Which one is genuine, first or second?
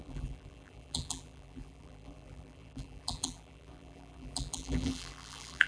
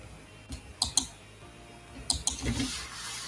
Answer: second